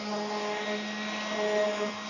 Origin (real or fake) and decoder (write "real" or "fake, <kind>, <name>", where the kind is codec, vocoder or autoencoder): real